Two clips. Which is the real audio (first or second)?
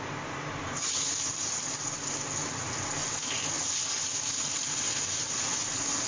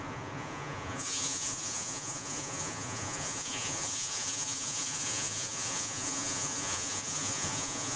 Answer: first